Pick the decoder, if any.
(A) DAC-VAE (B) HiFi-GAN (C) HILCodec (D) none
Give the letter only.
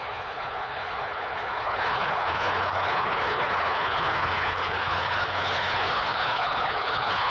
C